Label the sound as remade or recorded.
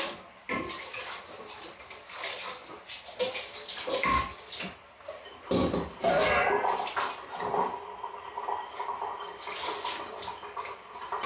recorded